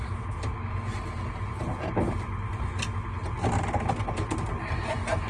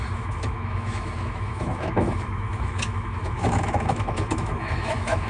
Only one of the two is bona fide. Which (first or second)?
first